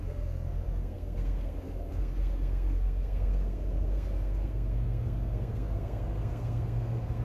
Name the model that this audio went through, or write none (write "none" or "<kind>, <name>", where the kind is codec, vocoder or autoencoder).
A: codec, SNAC